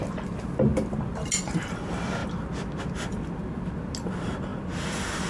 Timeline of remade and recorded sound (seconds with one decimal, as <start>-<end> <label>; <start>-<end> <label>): 0.0-5.3 recorded